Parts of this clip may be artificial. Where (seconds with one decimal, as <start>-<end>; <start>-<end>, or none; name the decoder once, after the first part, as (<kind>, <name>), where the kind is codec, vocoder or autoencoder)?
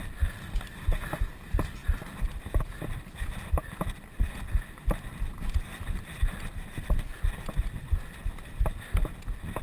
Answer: 1.8-3.3 (vocoder, BigVGAN v2)